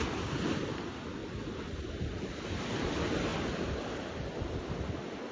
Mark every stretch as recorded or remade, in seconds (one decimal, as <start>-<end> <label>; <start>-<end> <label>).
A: 0.0-5.3 recorded